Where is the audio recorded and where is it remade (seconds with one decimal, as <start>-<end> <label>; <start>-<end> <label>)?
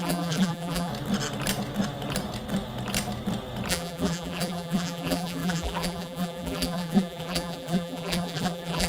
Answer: 0.0-0.9 remade; 0.9-3.7 recorded; 3.7-8.9 remade